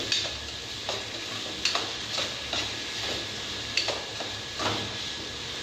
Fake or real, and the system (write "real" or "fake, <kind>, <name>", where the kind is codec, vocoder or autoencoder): real